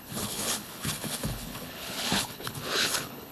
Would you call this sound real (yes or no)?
no